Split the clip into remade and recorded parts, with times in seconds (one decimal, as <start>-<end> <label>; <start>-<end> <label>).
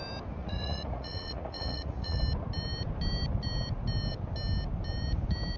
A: 0.0-0.4 recorded; 0.4-2.2 remade; 2.2-5.6 recorded